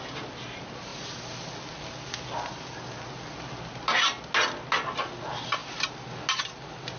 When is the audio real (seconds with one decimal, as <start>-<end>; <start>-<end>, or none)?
0.0-7.0